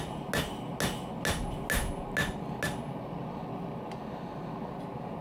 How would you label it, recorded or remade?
recorded